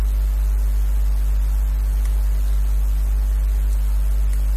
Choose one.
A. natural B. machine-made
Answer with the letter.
A